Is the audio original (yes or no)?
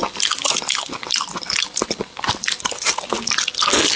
yes